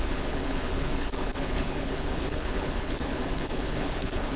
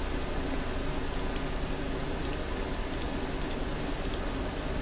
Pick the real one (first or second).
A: second